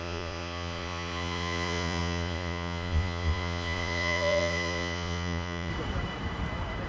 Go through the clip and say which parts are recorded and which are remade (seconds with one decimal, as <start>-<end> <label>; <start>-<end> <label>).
0.0-5.7 remade; 5.7-6.9 recorded